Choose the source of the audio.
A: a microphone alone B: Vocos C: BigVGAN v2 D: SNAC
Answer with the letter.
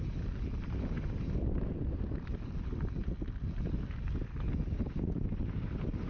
A